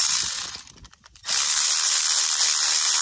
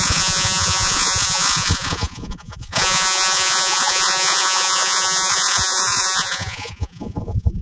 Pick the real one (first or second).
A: first